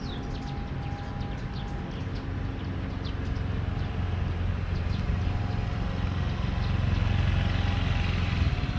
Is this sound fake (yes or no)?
no